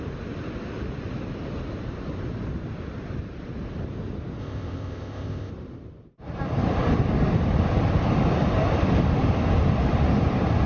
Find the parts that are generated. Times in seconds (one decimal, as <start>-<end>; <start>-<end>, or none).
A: 4.4-5.5